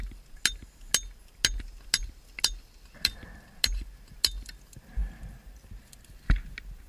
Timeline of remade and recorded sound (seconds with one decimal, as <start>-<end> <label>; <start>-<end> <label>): 0.0-6.9 recorded